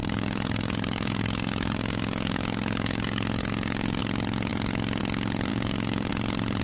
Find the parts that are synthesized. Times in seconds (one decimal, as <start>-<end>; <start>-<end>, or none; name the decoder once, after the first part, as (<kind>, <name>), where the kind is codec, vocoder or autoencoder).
0.0-4.0 (codec, DAC); 5.5-6.1